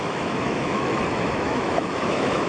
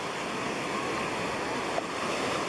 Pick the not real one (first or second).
first